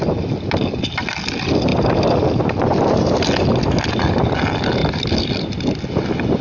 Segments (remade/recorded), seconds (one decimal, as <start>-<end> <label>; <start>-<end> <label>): 0.0-6.4 recorded